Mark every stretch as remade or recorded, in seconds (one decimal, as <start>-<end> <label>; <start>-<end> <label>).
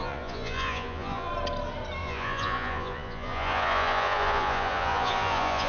0.0-1.3 remade; 1.3-2.0 recorded; 2.0-5.7 remade